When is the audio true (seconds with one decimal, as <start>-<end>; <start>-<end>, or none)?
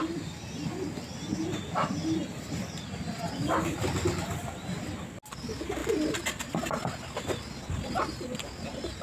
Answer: 0.0-1.3; 2.8-9.0